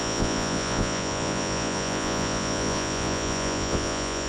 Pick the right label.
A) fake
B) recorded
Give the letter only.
A